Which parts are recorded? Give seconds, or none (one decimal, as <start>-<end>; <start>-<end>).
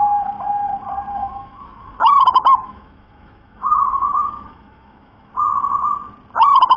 0.0-1.2; 5.3-6.8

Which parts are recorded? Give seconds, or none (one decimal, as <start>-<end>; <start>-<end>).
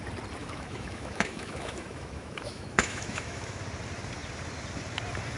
0.0-0.4; 3.6-5.4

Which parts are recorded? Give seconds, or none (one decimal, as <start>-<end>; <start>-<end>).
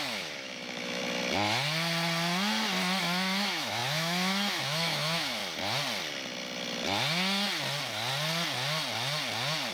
1.0-3.0; 5.4-9.7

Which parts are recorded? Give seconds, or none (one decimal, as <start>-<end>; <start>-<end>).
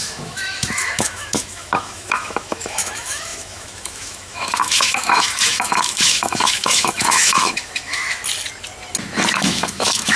8.2-9.3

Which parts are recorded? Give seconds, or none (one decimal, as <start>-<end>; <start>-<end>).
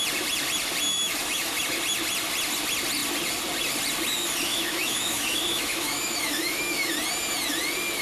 0.0-0.9; 1.6-4.5; 6.9-8.0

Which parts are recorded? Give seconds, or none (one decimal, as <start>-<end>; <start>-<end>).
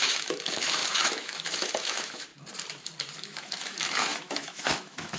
2.3-3.2